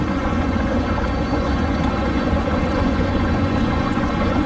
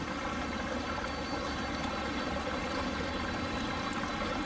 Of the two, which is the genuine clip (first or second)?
second